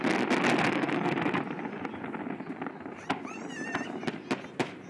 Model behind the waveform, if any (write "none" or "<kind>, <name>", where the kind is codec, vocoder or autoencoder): none